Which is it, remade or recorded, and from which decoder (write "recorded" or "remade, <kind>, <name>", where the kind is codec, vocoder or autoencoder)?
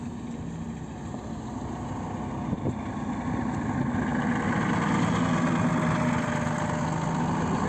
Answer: recorded